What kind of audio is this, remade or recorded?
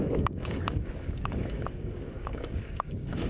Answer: remade